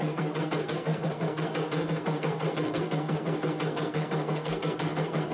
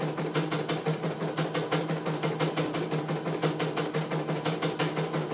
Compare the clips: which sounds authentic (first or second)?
second